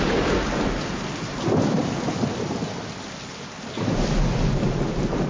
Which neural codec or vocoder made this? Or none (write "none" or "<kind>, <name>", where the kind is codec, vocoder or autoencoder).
none